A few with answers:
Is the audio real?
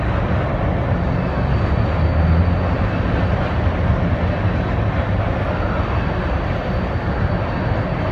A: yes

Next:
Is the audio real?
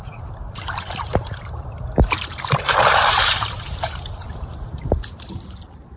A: no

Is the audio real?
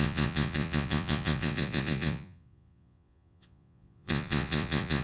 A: no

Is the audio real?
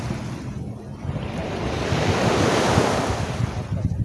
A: no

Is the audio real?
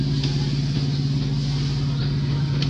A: yes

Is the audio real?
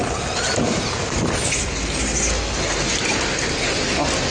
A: yes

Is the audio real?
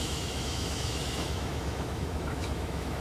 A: no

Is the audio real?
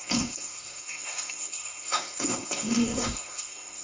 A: no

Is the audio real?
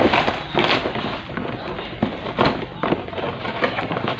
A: yes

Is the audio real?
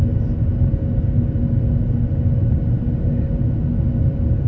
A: yes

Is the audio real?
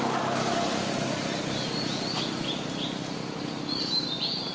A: yes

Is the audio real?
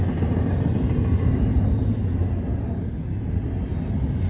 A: yes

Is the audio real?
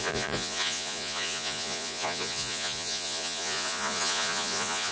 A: no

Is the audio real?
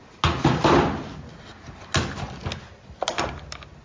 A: yes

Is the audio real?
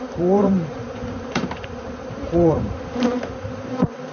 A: no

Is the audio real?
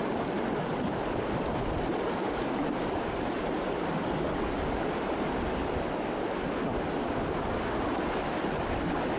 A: yes